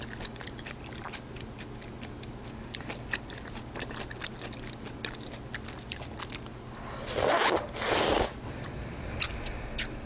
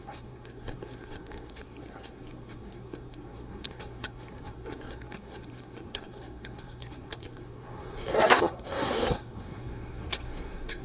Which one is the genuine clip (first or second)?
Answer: first